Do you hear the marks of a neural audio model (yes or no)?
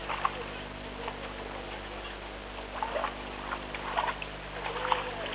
no